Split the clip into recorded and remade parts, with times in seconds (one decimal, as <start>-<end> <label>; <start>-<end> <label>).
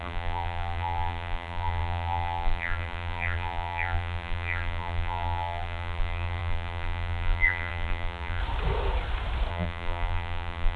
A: 0.0-8.4 remade; 8.4-9.5 recorded; 9.5-10.8 remade